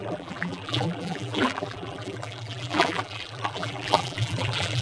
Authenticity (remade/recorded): remade